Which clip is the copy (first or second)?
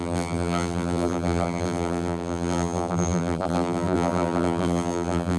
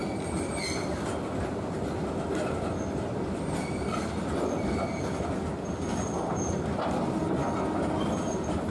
first